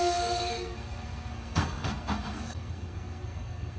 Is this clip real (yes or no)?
no